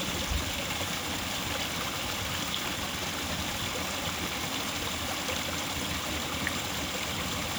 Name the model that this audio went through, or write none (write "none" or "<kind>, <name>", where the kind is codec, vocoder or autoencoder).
none